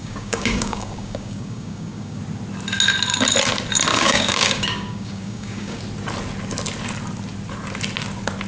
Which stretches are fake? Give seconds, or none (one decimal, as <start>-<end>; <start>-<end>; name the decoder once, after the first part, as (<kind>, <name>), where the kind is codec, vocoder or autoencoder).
0.0-2.2 (codec, DAC); 3.9-5.8